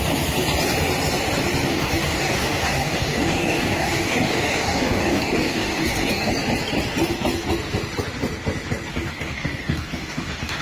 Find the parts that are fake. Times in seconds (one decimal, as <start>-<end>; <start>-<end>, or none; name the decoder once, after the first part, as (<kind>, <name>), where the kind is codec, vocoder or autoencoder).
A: 1.7-6.3 (codec, DAC); 8.9-10.6